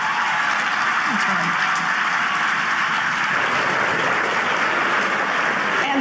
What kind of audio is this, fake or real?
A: real